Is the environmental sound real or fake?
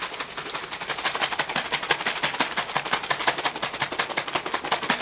real